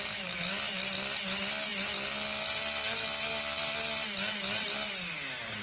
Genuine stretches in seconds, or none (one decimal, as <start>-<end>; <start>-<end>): 0.0-5.6